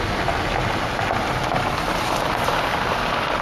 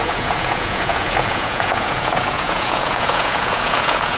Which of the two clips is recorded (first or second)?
first